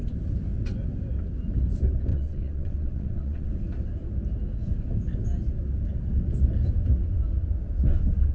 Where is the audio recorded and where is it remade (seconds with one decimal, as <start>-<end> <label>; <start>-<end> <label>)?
0.0-2.1 recorded; 2.1-3.5 remade; 3.5-8.3 recorded